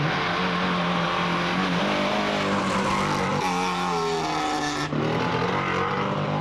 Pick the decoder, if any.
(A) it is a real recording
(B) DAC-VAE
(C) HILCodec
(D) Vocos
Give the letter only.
A